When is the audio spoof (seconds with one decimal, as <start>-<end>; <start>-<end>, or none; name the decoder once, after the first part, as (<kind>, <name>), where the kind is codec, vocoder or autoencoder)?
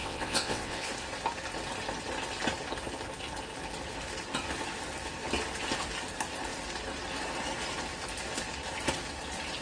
0.0-0.9 (vocoder, WaveNeXt)